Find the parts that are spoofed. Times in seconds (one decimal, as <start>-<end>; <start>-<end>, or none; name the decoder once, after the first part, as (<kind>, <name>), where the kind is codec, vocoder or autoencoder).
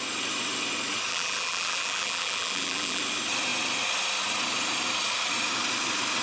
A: 1.1-3.0 (vocoder, BigVGAN v2)